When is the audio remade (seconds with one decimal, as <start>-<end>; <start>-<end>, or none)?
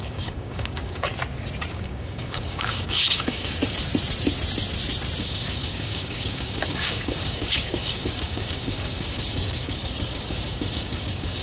0.0-1.1; 1.7-3.6; 5.2-11.4